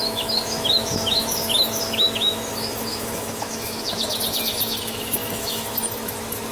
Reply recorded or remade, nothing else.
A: remade